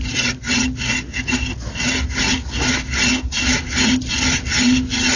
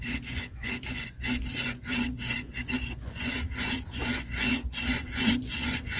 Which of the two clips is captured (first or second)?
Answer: first